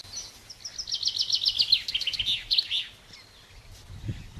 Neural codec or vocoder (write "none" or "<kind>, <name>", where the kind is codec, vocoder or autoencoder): none